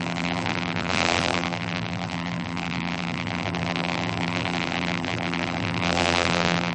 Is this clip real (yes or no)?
no